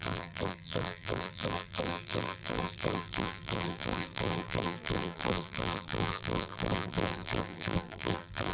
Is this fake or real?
fake